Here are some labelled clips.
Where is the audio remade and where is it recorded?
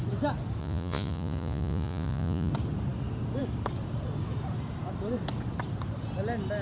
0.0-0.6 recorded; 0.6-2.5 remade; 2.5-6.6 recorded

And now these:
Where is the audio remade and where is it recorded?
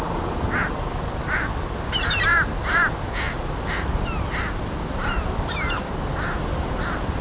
0.0-7.2 recorded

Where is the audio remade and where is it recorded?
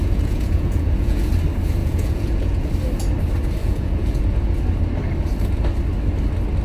0.0-1.3 remade; 1.3-1.8 recorded; 1.8-2.7 remade; 2.7-3.6 recorded; 3.6-4.2 remade; 4.2-6.6 recorded